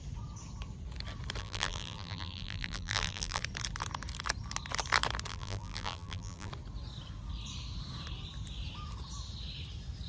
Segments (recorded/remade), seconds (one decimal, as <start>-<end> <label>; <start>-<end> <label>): 0.0-1.4 recorded; 1.4-3.4 remade; 3.4-5.3 recorded; 5.3-6.5 remade; 6.5-10.1 recorded